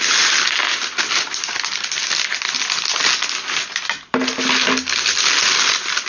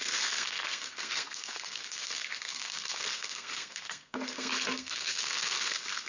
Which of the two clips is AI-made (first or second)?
second